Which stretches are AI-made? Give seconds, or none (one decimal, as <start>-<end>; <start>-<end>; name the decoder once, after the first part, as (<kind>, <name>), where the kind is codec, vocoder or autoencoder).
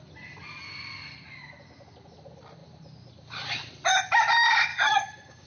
4.7-5.5 (codec, DAC)